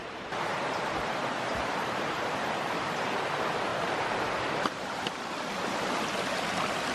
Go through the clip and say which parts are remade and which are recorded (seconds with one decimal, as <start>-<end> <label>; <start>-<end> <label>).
0.0-3.0 remade; 3.0-3.7 recorded; 3.7-4.4 remade; 4.4-6.9 recorded